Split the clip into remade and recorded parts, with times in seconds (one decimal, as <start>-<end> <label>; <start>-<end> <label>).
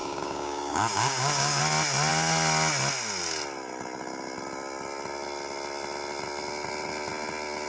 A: 0.0-1.6 remade; 1.6-7.7 recorded